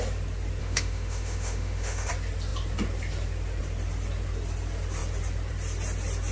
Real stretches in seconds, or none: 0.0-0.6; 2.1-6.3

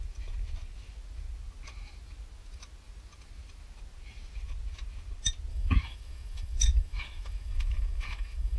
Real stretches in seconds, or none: 0.0-5.5

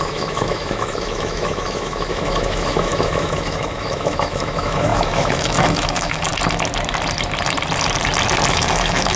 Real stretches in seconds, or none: 6.3-8.5

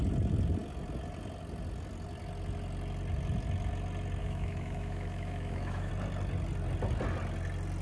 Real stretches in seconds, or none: 0.0-4.2; 5.9-7.8

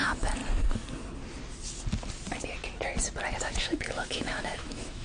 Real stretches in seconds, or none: 0.4-3.4

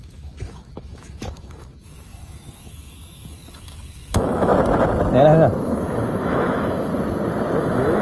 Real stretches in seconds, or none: 4.5-5.6; 6.9-7.6

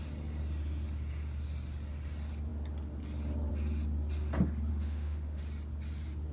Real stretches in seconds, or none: 0.0-4.7; 5.4-6.3

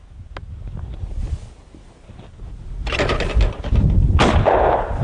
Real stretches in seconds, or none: 0.0-5.0